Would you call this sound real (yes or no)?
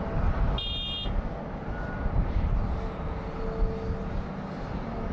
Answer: yes